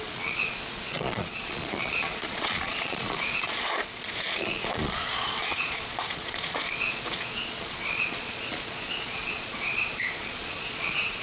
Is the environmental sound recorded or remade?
remade